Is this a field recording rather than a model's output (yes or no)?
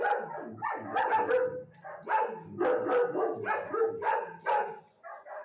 yes